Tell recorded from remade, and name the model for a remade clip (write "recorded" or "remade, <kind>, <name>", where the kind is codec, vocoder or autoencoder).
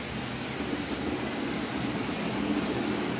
recorded